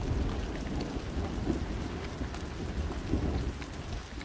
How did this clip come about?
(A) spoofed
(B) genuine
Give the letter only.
B